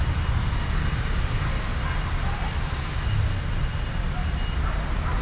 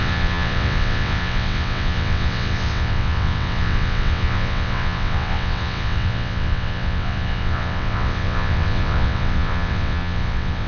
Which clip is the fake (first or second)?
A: second